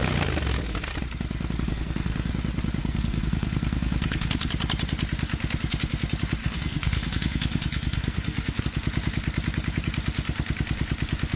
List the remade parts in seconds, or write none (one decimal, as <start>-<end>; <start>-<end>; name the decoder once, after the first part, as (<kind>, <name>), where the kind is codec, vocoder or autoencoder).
1.7-2.3 (codec, SNAC); 2.8-4.5; 6.4-8.6